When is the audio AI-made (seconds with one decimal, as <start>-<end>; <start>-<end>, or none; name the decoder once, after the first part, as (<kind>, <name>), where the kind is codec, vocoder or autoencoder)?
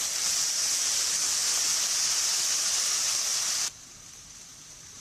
0.0-1.4 (vocoder, BigVGAN v2); 2.1-3.3; 3.8-5.0